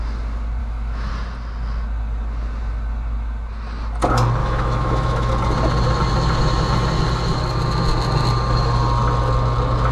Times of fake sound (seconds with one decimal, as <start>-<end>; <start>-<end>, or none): 0.6-1.1; 4.4-5.3